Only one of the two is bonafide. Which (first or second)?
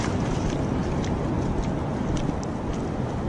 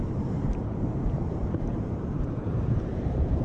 first